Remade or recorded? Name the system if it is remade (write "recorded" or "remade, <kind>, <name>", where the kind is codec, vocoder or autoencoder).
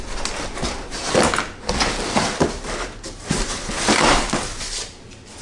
recorded